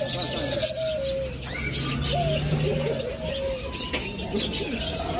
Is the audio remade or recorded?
recorded